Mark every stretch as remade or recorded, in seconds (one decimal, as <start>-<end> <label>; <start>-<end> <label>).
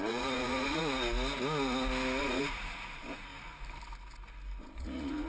0.0-0.8 remade; 0.8-2.2 recorded; 2.2-3.3 remade; 3.3-4.6 recorded; 4.6-5.3 remade